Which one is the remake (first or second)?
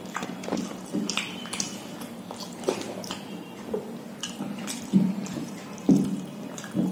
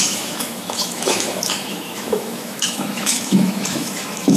second